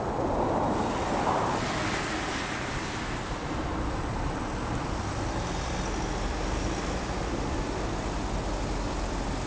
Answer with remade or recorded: recorded